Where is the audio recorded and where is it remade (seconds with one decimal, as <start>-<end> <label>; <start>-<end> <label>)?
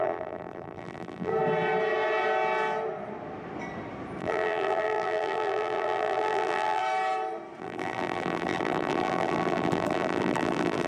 0.0-1.3 remade; 1.3-4.2 recorded; 4.2-6.8 remade; 6.8-7.6 recorded; 7.6-10.9 remade